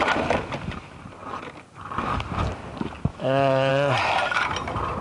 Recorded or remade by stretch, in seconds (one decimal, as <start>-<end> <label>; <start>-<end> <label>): 0.0-3.1 recorded; 3.1-3.7 remade; 3.7-5.0 recorded